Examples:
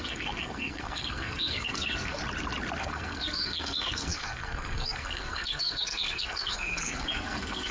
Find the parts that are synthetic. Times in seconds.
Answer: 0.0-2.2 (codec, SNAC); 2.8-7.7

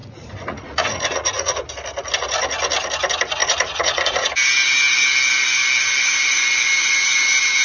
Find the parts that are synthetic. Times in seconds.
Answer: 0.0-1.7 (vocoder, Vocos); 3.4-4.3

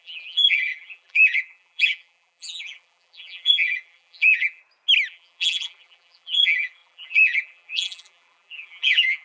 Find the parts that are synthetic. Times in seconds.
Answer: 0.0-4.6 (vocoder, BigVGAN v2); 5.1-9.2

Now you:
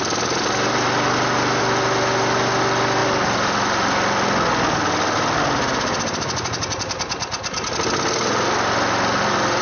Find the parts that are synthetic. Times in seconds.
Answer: none

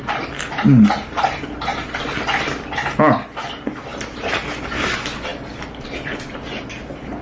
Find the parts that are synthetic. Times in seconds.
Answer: none

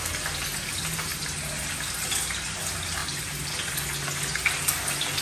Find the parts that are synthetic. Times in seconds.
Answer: none